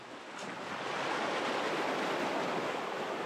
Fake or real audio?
real